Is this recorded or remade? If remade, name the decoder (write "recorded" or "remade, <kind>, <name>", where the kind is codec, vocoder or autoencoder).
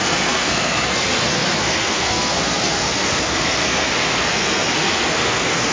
remade, codec, SNAC